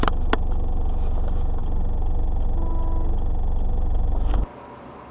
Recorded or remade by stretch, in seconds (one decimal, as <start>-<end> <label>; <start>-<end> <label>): 0.0-5.1 recorded